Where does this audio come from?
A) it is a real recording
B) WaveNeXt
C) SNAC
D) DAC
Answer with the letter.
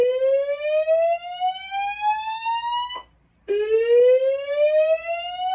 A